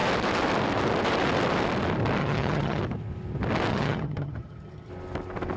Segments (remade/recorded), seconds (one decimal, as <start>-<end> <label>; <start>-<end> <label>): 0.0-2.2 recorded; 2.2-2.8 remade; 2.8-3.7 recorded; 3.7-4.9 remade; 4.9-5.6 recorded